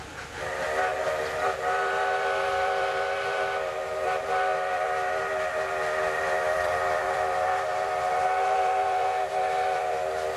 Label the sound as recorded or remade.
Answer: remade